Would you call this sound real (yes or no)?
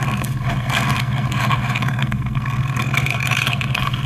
no